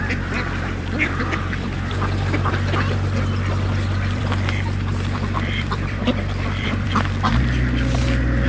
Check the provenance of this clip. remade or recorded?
remade